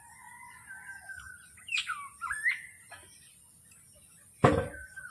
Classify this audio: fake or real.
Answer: real